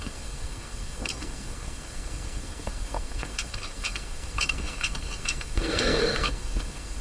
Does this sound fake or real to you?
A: fake